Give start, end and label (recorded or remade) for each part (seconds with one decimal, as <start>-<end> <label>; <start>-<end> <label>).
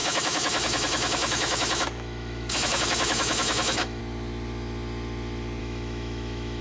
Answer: 0.0-4.0 remade; 4.0-5.6 recorded; 5.6-6.6 remade